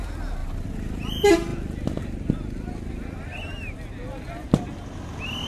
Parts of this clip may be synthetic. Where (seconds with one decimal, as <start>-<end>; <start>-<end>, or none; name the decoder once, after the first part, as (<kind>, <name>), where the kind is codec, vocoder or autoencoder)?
none